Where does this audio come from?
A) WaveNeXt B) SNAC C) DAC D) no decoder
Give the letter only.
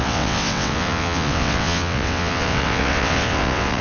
A